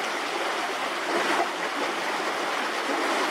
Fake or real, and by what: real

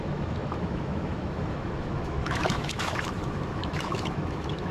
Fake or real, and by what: fake, autoencoder, DAC-VAE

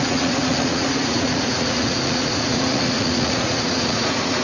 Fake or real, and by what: fake, vocoder, Vocos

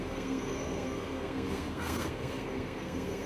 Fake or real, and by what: fake, codec, SNAC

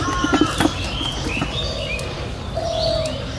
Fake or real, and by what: real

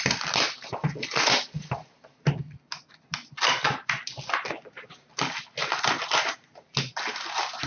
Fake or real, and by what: real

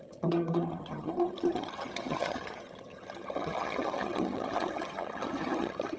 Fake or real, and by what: fake, vocoder, HiFi-GAN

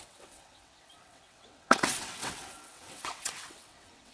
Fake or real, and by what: fake, vocoder, WaveNeXt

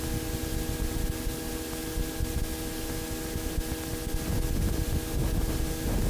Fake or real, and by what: real